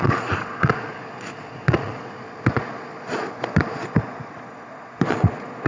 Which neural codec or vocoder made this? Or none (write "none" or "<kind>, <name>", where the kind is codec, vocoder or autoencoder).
vocoder, Vocos